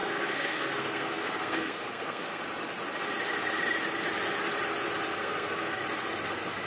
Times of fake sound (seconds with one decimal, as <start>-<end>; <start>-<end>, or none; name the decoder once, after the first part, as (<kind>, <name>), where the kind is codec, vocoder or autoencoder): 0.0-2.4 (codec, SNAC); 5.2-5.8